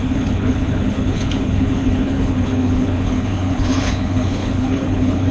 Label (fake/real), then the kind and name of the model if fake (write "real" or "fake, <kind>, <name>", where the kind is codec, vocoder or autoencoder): fake, codec, HILCodec